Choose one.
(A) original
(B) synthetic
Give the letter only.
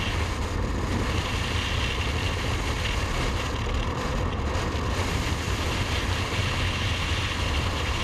A